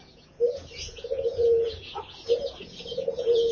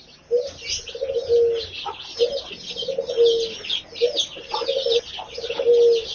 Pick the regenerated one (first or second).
first